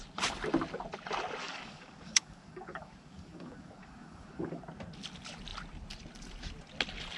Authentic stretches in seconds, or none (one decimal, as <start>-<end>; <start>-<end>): 0.0-1.4; 4.6-7.2